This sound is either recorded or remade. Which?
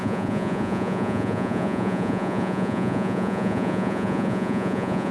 remade